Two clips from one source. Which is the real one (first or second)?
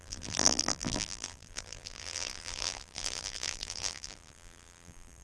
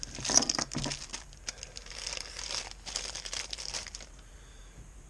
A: second